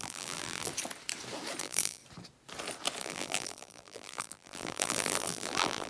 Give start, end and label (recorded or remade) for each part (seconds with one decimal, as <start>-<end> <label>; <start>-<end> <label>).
0.0-0.7 remade; 0.7-1.6 recorded; 1.6-2.0 remade; 2.0-3.0 recorded; 3.0-5.9 remade